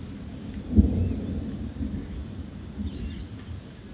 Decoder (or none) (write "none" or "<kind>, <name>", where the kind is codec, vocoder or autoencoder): vocoder, BigVGAN v2